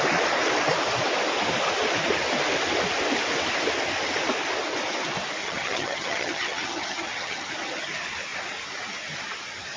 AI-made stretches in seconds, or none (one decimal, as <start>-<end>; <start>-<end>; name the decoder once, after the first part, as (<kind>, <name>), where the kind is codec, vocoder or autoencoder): 5.4-7.5 (vocoder, HiFi-GAN)